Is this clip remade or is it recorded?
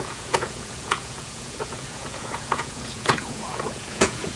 remade